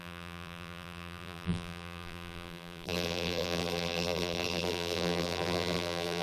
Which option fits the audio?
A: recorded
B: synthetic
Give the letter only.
B